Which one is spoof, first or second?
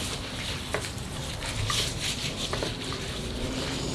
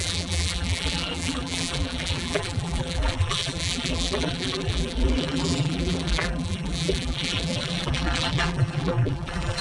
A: second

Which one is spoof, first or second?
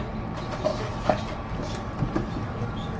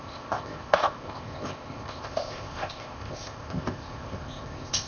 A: second